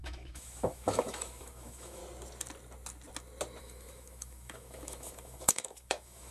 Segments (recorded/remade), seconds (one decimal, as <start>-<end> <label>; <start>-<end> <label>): 0.0-2.0 remade; 2.0-3.6 recorded; 3.6-6.3 remade